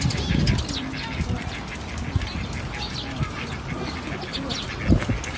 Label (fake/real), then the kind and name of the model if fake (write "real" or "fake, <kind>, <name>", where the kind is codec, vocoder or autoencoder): real